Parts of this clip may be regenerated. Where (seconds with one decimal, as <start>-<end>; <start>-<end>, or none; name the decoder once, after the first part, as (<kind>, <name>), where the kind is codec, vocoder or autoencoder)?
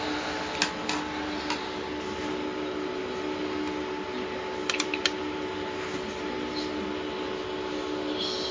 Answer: none